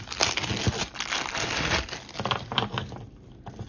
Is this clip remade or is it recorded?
recorded